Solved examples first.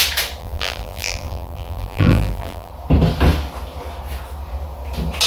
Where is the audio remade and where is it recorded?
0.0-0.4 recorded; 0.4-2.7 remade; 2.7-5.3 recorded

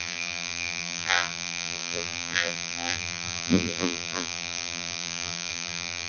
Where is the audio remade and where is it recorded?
0.0-6.1 remade

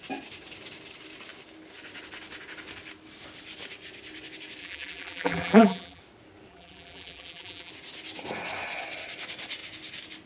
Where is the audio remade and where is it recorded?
0.0-4.6 recorded; 4.6-6.0 remade; 6.0-6.5 recorded; 6.5-7.7 remade; 7.7-10.3 recorded